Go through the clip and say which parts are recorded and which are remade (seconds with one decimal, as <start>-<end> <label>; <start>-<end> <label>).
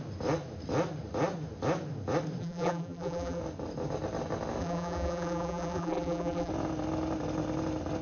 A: 0.0-2.4 recorded; 2.4-3.4 remade; 3.4-4.6 recorded; 4.6-6.5 remade; 6.5-8.0 recorded